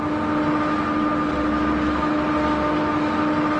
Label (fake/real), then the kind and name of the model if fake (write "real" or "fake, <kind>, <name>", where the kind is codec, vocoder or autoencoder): real